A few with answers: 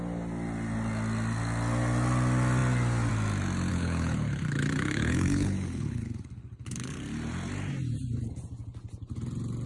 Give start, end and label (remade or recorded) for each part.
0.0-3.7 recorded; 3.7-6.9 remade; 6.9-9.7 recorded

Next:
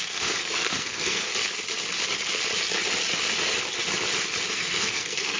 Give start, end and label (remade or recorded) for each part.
0.0-1.3 remade; 1.3-4.5 recorded; 4.5-5.4 remade